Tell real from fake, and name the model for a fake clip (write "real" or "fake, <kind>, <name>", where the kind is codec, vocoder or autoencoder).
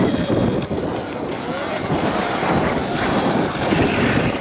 real